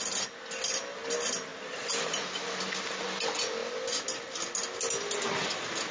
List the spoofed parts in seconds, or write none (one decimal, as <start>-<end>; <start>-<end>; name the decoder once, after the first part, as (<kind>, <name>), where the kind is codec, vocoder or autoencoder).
none